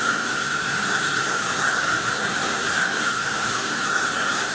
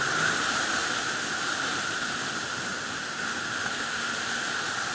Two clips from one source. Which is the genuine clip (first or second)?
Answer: second